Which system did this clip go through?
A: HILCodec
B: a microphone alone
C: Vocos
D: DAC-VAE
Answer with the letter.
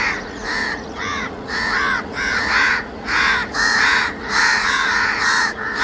C